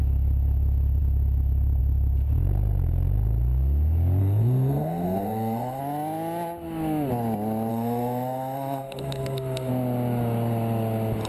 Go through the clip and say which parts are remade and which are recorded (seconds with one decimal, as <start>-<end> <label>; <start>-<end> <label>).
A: 0.0-4.2 recorded; 4.2-5.8 remade; 5.8-7.7 recorded; 7.7-9.7 remade; 9.7-11.3 recorded